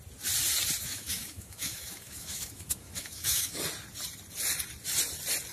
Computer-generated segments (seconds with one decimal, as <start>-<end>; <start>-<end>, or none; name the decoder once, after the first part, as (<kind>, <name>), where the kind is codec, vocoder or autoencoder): 0.8-3.6 (autoencoder, DAC-VAE)